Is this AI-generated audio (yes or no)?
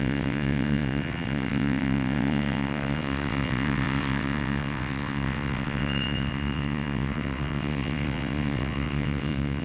yes